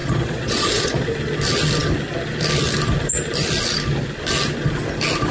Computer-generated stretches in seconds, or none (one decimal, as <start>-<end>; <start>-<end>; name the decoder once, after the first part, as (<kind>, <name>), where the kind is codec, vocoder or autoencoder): 0.0-1.0 (vocoder, Vocos)